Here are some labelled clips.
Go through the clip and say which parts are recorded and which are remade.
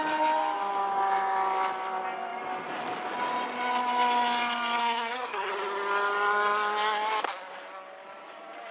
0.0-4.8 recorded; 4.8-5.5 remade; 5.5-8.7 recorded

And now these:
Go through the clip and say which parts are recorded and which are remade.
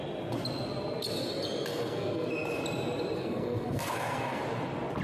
0.0-1.7 recorded; 1.7-2.3 remade; 2.3-3.2 recorded; 3.2-4.4 remade; 4.4-5.0 recorded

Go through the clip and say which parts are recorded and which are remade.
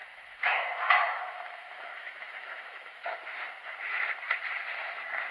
0.0-3.2 remade; 3.2-5.3 recorded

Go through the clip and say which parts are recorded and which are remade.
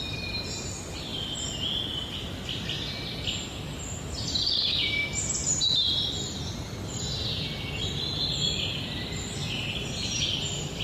0.0-9.4 recorded; 9.4-10.3 remade; 10.3-10.8 recorded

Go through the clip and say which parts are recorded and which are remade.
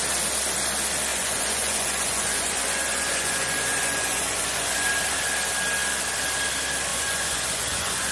0.0-1.1 recorded; 1.1-4.9 remade; 4.9-6.9 recorded; 6.9-8.1 remade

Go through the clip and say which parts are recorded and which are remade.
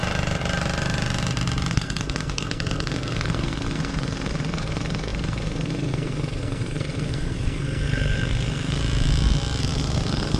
0.0-1.7 recorded; 1.7-8.8 remade; 8.8-9.6 recorded; 9.6-10.4 remade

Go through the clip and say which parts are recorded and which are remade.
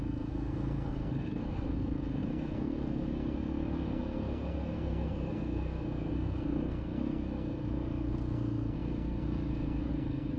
0.0-10.4 remade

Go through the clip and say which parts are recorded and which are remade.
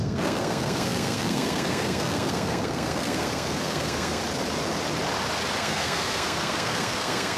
0.0-4.2 remade; 4.2-5.6 recorded; 5.6-7.4 remade